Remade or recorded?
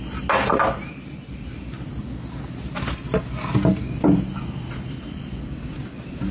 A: recorded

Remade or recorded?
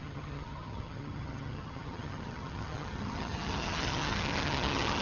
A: remade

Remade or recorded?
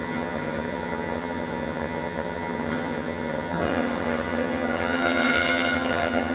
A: remade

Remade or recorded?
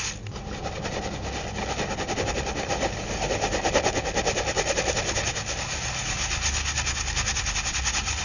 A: recorded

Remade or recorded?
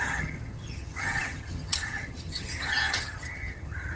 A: remade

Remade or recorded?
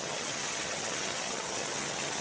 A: remade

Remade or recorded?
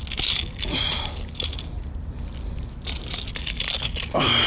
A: recorded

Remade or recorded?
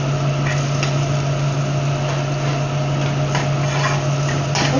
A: recorded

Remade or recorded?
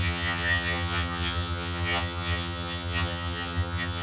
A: remade